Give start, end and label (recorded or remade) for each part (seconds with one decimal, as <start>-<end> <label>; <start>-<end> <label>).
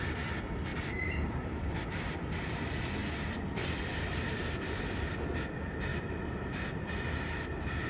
0.0-0.7 recorded; 0.7-1.7 remade; 1.7-5.9 recorded; 5.9-6.5 remade; 6.5-7.9 recorded